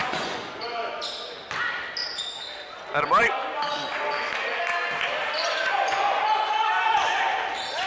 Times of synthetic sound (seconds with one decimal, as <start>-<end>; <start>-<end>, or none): 0.0-1.0; 5.4-6.2